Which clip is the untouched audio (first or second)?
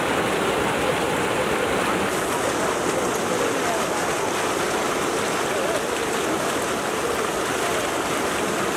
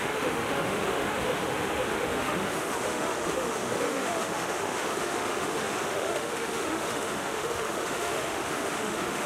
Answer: first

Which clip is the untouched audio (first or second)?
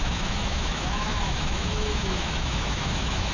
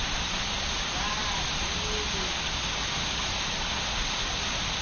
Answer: second